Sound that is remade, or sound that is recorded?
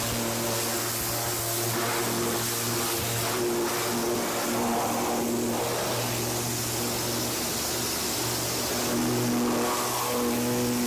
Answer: recorded